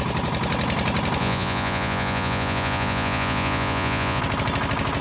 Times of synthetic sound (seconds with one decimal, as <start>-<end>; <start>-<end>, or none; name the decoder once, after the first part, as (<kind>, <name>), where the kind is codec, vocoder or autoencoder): 1.2-4.2 (vocoder, Vocos)